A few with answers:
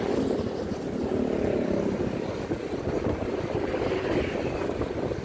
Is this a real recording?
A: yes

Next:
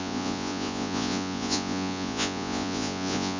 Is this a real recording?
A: no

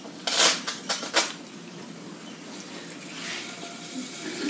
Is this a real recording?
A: yes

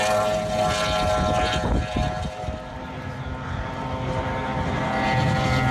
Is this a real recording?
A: yes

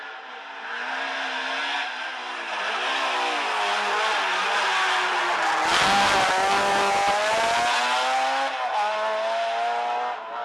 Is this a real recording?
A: yes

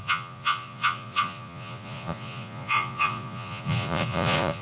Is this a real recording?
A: no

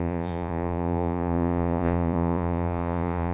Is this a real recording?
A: no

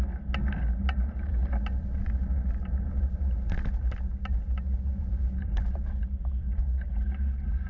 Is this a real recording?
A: yes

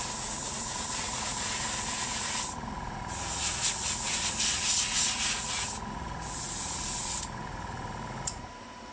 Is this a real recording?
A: no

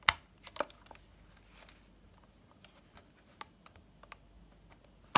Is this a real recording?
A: yes